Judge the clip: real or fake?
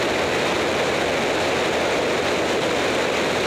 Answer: real